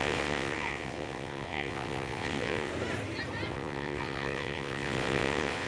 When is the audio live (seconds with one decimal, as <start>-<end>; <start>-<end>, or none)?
2.7-3.5